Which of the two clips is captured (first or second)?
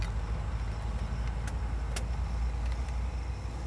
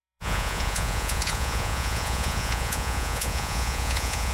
first